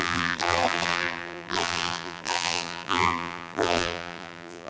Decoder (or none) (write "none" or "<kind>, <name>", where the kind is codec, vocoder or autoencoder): vocoder, BigVGAN v2